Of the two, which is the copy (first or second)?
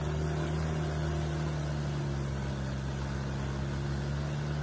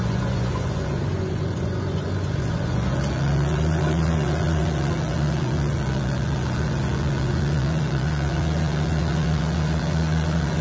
second